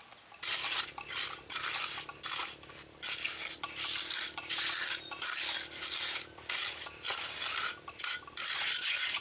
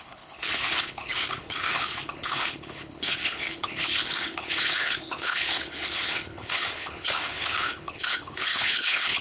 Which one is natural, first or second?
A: first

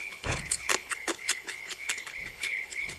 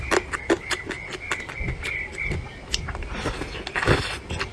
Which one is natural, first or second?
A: second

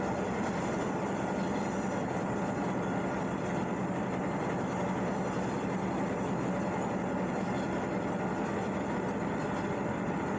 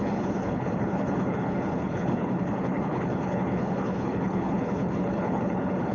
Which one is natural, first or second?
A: first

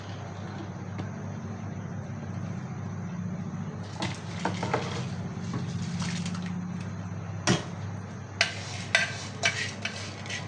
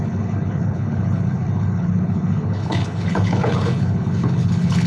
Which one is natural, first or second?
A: first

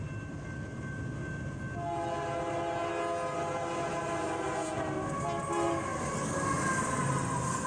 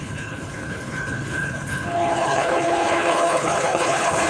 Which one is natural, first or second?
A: first